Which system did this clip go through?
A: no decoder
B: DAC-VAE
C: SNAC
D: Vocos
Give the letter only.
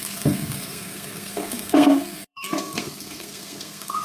C